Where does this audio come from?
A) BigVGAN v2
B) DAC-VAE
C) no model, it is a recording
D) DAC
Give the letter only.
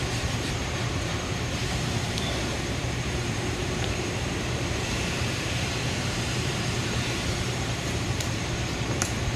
A